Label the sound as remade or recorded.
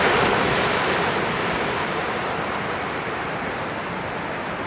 recorded